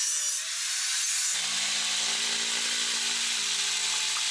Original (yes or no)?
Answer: yes